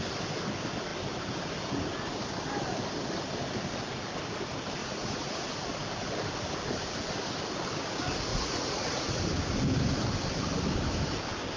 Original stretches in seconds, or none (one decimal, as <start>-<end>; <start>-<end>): 0.0-4.8; 5.5-8.3; 9.2-11.6